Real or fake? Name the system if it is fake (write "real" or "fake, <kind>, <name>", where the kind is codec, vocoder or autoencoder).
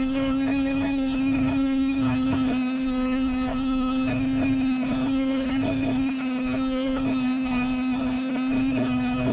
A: fake, codec, SNAC